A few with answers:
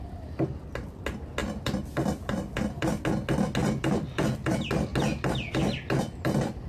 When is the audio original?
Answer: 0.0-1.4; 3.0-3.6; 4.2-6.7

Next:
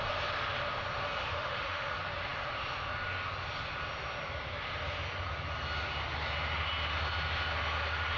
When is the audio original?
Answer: 0.0-1.2; 1.9-8.2

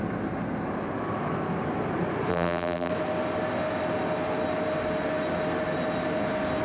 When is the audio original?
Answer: 0.0-2.3; 2.9-6.6

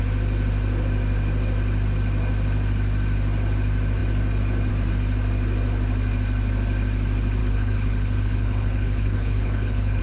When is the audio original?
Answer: 0.0-7.4